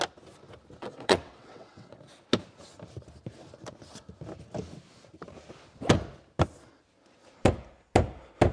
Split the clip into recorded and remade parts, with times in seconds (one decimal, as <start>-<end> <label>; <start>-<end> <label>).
0.0-0.8 recorded; 0.8-2.0 remade; 2.0-8.5 recorded